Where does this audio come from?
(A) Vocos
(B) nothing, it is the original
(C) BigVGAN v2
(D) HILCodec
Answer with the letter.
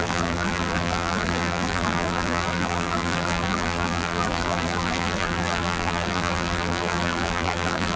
C